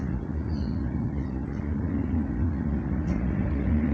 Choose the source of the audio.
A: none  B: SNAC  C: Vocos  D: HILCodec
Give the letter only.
C